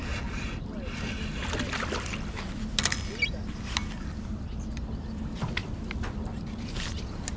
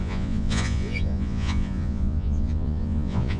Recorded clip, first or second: first